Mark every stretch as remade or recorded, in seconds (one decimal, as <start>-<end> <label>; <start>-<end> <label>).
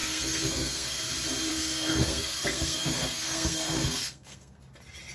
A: 0.0-1.0 remade; 1.0-1.5 recorded; 1.5-4.6 remade; 4.6-5.1 recorded